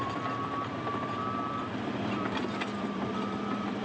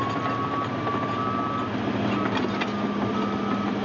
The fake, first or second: first